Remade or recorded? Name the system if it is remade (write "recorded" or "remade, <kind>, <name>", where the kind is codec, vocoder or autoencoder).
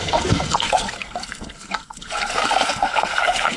remade, codec, SNAC